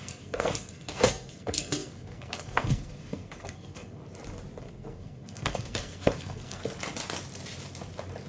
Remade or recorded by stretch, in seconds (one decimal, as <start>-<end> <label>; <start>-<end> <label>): 0.0-4.0 remade; 4.0-4.6 recorded; 4.6-6.6 remade; 6.6-8.3 recorded